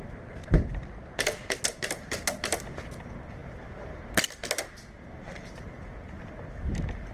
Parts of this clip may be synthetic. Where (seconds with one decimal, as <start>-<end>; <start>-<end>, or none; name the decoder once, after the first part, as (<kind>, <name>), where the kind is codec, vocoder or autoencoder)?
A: none